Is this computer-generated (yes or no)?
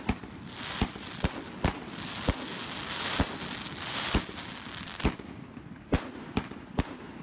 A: no